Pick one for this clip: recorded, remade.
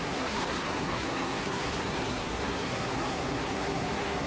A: remade